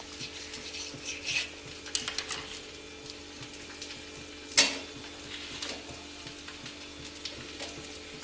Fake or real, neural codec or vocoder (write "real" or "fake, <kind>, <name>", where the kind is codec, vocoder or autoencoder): real